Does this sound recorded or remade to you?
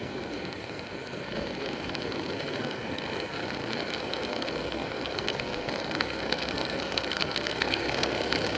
remade